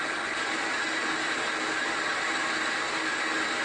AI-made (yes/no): no